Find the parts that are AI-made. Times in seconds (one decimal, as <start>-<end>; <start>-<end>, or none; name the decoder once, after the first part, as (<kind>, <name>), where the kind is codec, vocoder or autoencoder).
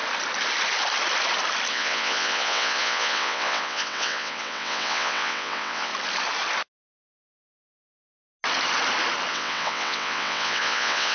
1.7-5.9 (vocoder, WaveNeXt); 9.3-11.1